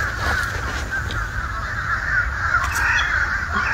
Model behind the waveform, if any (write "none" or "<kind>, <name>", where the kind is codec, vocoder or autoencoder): vocoder, BigVGAN v2